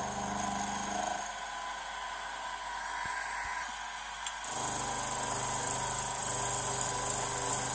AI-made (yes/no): no